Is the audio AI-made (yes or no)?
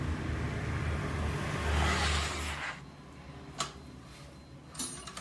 no